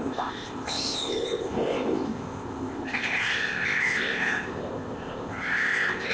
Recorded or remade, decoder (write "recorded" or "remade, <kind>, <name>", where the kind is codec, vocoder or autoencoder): remade, codec, ZipCodec